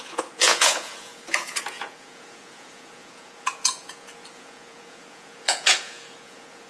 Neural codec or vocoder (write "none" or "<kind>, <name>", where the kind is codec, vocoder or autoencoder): vocoder, Vocos